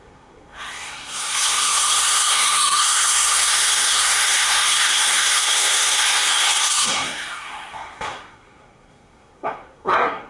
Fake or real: fake